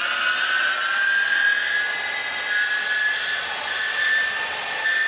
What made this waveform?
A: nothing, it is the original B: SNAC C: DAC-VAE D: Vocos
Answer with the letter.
A